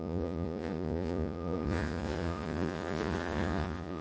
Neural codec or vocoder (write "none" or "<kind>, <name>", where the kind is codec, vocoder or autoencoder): vocoder, Vocos